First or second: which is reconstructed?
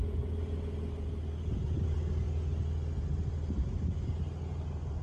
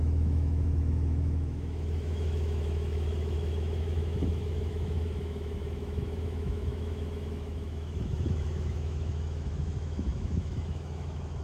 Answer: second